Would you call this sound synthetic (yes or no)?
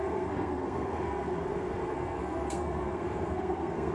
yes